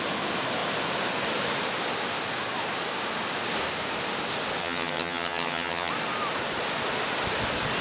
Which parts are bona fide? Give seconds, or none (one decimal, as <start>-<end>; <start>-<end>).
0.0-4.6; 5.9-7.8